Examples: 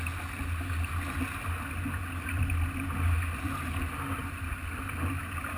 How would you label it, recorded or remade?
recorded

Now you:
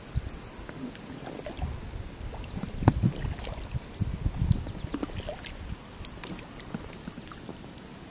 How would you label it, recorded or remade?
recorded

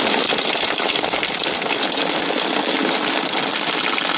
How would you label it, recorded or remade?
recorded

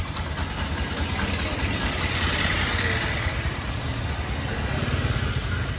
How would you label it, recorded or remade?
recorded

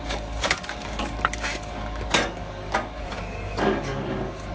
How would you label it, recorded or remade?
remade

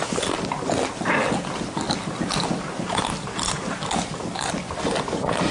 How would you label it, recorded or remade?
recorded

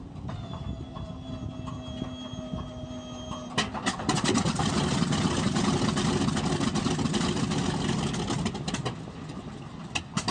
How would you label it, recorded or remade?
recorded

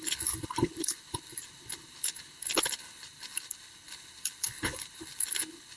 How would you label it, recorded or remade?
remade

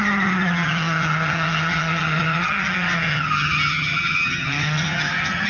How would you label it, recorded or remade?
remade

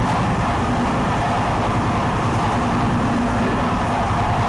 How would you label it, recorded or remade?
recorded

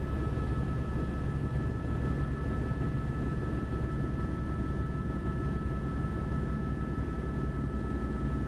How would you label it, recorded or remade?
remade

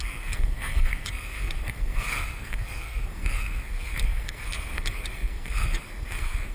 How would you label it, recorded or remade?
remade